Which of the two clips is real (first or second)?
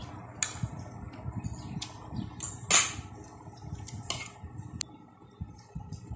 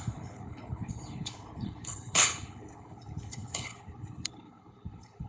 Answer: first